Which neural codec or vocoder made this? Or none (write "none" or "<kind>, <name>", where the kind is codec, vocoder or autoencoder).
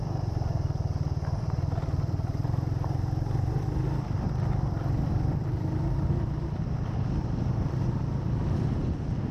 vocoder, BigVGAN v2